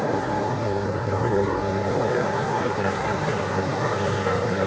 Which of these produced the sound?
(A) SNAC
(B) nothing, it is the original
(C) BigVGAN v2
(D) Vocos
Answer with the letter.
A